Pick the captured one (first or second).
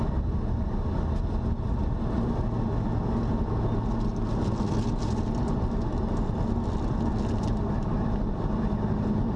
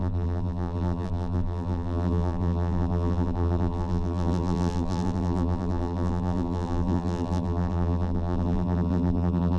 first